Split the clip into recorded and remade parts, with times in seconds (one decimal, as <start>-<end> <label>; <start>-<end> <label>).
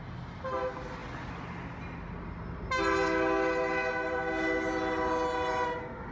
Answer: 0.0-6.1 recorded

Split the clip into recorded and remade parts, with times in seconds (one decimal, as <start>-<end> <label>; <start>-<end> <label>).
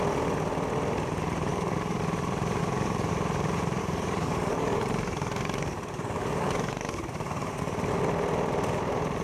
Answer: 0.0-1.5 recorded; 1.5-2.0 remade; 2.0-2.6 recorded; 2.6-3.1 remade; 3.1-3.8 recorded; 3.8-7.6 remade; 7.6-9.2 recorded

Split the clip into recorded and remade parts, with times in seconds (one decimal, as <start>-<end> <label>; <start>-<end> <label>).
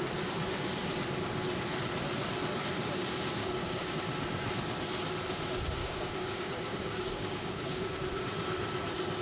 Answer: 0.0-3.4 recorded; 3.4-3.9 remade; 3.9-5.8 recorded; 5.8-8.0 remade; 8.0-9.2 recorded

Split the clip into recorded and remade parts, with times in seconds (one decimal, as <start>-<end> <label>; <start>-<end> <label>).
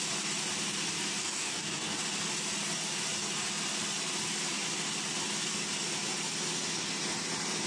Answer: 0.0-1.2 recorded; 1.2-2.0 remade; 2.0-7.7 recorded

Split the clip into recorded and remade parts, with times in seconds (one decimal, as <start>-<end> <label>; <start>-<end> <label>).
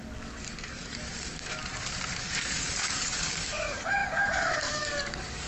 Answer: 0.0-1.6 remade; 1.6-2.2 recorded; 2.2-5.5 remade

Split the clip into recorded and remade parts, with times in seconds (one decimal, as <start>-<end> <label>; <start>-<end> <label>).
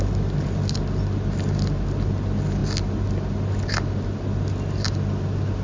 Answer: 0.0-5.6 recorded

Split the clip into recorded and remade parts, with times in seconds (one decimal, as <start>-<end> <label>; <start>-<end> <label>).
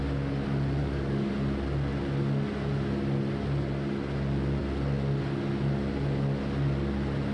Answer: 0.0-0.8 recorded; 0.8-1.3 remade; 1.3-7.3 recorded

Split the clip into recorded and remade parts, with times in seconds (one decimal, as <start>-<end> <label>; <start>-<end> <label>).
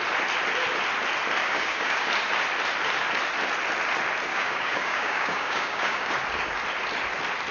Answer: 0.0-1.4 recorded; 1.4-2.1 remade; 2.1-4.3 recorded; 4.3-6.1 remade; 6.1-7.5 recorded